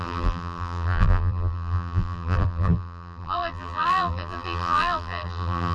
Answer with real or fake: fake